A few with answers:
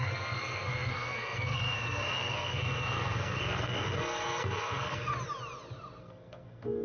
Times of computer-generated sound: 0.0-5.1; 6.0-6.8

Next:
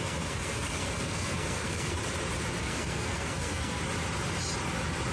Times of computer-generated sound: 0.0-2.0; 2.6-3.8

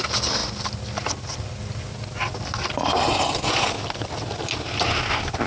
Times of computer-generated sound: none